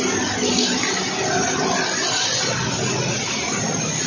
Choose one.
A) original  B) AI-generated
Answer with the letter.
A